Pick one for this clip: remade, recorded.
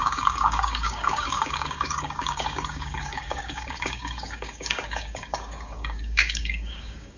remade